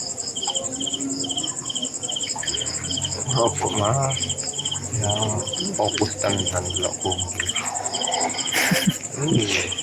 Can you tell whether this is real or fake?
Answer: real